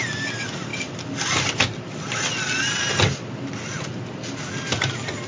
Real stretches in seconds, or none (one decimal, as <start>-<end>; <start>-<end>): 0.0-5.3